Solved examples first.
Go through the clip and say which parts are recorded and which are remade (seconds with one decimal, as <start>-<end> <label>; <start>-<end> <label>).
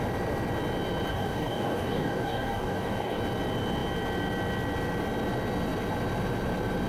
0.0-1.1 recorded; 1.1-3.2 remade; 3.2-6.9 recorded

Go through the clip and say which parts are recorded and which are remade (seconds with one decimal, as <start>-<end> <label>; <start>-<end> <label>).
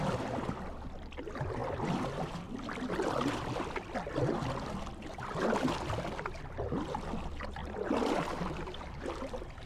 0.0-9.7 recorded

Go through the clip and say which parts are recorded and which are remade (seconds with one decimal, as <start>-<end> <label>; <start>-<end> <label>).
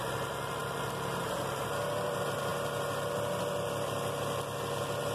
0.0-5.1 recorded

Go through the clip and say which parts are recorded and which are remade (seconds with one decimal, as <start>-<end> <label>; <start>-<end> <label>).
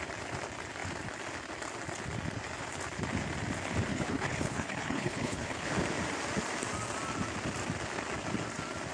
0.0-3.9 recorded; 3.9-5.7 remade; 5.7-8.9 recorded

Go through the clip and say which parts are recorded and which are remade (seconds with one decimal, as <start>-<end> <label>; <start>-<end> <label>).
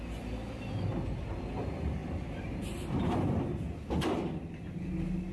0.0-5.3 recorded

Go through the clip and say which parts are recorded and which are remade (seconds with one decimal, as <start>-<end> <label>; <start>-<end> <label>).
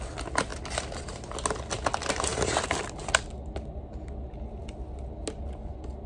0.0-6.1 recorded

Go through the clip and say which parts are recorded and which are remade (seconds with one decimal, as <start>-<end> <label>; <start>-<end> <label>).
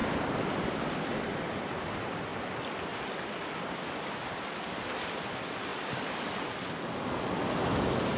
0.0-8.2 recorded